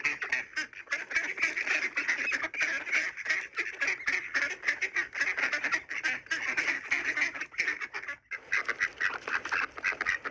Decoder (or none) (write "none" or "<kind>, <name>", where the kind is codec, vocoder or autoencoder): none